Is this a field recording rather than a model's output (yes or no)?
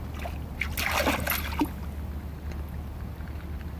yes